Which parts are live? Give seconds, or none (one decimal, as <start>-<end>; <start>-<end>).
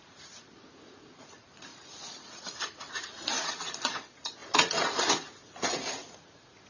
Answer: none